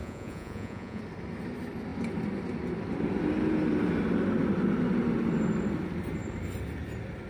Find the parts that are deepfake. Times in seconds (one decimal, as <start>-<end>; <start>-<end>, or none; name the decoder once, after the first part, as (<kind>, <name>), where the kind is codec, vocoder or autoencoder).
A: 0.0-1.0 (vocoder, Vocos)